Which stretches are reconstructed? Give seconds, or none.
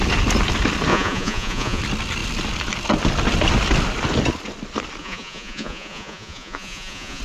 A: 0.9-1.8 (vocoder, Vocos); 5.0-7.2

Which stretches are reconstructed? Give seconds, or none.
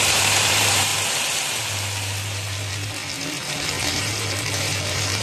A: 0.0-0.9 (vocoder, BigVGAN v2); 3.5-5.2